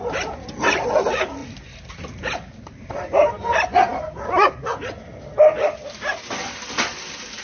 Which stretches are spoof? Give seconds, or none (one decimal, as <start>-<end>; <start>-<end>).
1.4-3.3